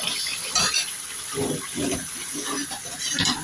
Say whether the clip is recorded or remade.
recorded